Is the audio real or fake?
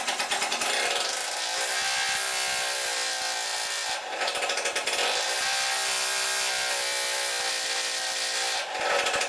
real